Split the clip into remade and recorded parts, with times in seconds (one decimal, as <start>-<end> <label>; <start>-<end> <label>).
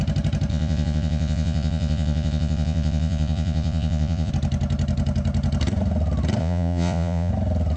0.0-0.5 recorded; 0.5-4.3 remade; 4.3-6.4 recorded; 6.4-7.3 remade; 7.3-7.8 recorded